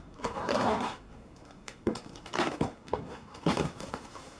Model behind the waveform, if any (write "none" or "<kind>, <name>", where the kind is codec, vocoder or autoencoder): codec, SNAC